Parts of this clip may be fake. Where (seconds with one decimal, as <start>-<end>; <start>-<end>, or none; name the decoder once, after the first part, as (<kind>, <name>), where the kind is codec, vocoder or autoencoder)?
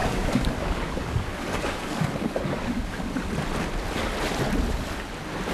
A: 0.0-3.3 (codec, DAC)